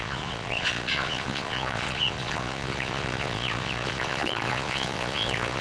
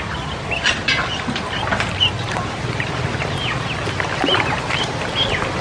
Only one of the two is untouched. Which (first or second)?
second